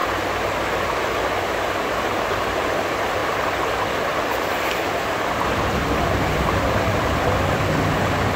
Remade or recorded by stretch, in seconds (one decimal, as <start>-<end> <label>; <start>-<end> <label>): 0.0-8.4 recorded